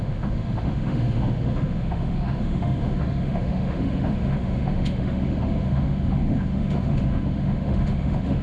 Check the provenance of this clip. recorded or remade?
remade